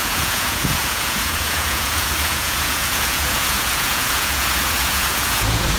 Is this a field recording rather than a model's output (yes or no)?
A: no